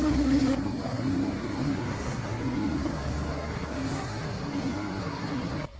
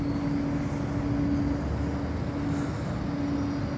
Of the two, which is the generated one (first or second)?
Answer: first